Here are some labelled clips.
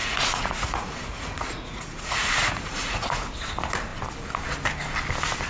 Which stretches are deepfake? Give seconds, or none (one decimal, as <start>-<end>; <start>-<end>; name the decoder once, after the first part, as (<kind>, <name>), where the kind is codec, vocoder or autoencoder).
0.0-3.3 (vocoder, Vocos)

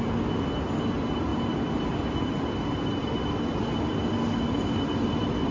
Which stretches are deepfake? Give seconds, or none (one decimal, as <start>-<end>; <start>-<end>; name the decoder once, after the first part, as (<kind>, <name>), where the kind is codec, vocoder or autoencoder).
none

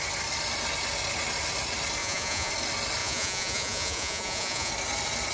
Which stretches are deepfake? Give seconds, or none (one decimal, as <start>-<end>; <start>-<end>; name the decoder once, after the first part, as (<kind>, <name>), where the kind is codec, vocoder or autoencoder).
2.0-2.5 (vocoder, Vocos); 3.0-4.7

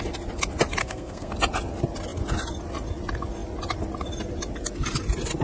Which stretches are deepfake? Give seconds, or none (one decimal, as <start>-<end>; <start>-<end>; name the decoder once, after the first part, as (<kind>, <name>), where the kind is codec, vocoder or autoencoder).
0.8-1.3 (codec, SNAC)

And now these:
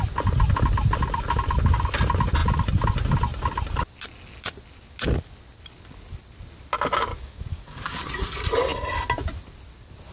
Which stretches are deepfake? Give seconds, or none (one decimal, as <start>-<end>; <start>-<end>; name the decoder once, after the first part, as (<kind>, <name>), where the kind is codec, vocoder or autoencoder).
7.1-8.1 (codec, DAC)

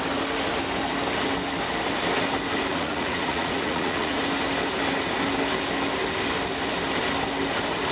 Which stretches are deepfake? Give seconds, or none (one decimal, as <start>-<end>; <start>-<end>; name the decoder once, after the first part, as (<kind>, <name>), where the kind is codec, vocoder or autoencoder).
2.7-4.2 (vocoder, Vocos)

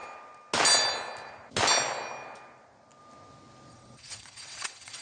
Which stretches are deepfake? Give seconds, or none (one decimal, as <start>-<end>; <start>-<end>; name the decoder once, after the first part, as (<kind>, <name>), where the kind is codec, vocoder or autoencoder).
3.7-5.0 (vocoder, WaveNeXt)

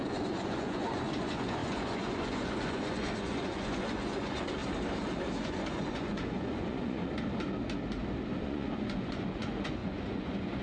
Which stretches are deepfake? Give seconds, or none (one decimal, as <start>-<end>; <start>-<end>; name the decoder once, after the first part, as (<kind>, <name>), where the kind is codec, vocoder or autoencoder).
0.0-4.6 (vocoder, Vocos); 5.4-7.0; 8.4-10.6